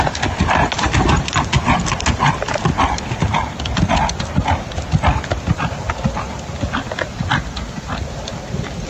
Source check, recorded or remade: recorded